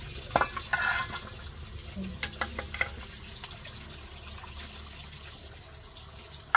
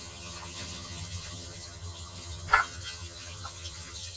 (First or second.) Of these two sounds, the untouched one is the first